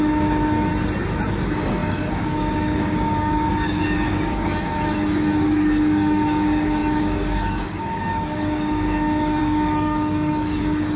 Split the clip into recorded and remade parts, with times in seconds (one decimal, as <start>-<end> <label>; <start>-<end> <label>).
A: 0.0-0.7 remade; 0.7-1.3 recorded; 1.3-11.0 remade